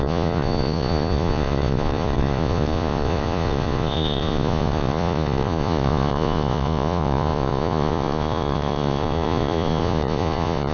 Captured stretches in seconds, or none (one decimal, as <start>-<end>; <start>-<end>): none

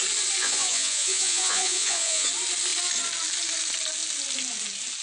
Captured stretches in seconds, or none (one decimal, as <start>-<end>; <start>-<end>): 0.0-0.4; 2.3-5.0

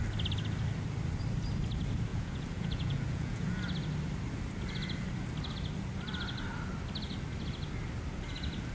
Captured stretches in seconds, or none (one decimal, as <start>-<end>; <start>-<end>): 0.0-2.1; 3.6-8.7